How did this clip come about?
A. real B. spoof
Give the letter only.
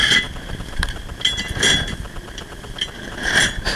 A